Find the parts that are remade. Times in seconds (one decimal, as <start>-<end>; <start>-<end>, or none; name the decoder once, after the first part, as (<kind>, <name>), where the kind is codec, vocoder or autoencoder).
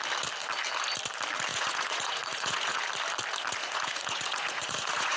1.5-2.8 (vocoder, Vocos); 3.6-5.2